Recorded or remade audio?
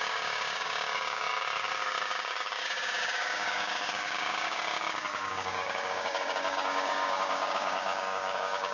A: remade